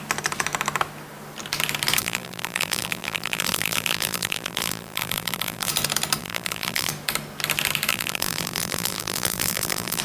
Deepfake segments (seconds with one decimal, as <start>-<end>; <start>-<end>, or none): 2.0-5.7; 6.2-6.9; 7.9-10.0